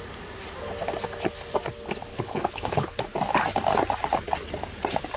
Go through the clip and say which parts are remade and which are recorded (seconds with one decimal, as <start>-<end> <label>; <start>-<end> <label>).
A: 0.0-2.1 recorded; 2.1-3.0 remade; 3.0-5.2 recorded